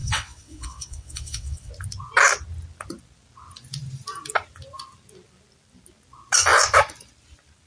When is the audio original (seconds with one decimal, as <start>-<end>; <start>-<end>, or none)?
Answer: 1.7-7.7